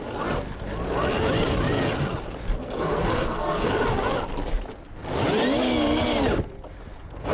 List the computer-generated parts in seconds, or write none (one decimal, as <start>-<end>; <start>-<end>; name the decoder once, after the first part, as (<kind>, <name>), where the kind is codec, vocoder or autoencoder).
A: 2.6-3.7 (codec, SNAC)